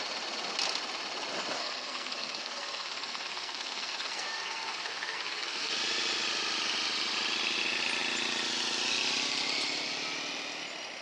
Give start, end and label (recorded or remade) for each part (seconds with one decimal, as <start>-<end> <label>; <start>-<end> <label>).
0.0-1.6 recorded; 1.6-5.7 remade; 5.7-11.0 recorded

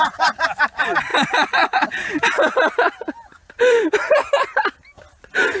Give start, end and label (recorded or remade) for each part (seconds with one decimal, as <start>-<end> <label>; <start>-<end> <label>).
0.0-3.4 recorded; 3.4-4.4 remade; 4.4-5.6 recorded

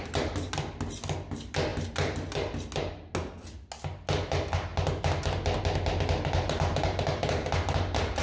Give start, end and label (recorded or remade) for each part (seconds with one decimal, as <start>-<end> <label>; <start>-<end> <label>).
0.0-8.2 recorded